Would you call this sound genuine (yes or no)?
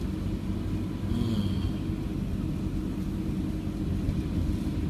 yes